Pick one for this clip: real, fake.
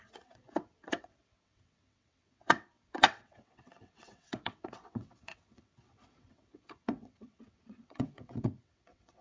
fake